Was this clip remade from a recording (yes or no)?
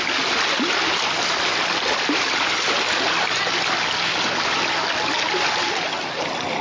no